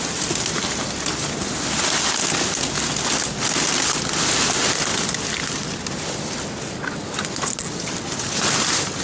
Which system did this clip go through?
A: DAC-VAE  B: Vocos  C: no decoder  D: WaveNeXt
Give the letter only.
C